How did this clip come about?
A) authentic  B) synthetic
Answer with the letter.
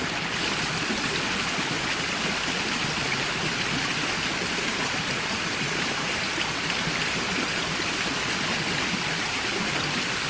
A